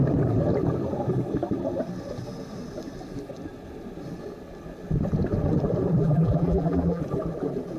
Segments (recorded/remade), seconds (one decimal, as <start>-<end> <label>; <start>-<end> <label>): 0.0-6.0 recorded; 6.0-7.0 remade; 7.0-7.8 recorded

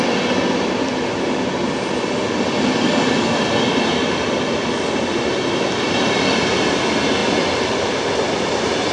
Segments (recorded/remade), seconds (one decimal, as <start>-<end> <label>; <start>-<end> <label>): 0.0-8.9 recorded

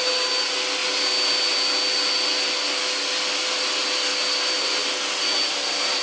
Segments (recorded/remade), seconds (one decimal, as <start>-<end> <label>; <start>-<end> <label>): 0.0-6.0 recorded

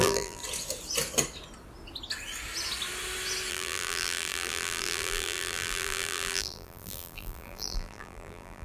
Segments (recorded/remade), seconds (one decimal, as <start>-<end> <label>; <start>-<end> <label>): 0.0-0.4 remade; 0.4-3.5 recorded; 3.5-8.6 remade